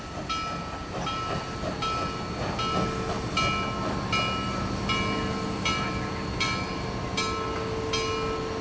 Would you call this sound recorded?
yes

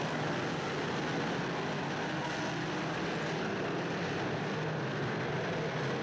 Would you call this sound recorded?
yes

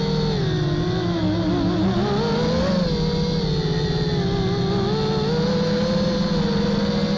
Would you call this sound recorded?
yes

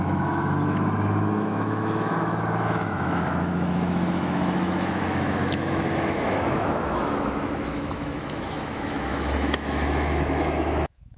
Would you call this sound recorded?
no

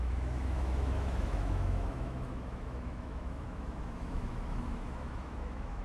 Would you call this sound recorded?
no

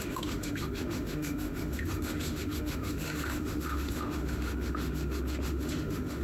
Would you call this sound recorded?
no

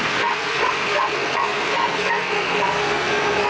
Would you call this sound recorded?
no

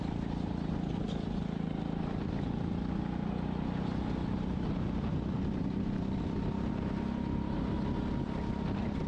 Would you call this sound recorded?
yes